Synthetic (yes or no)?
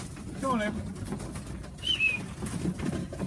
no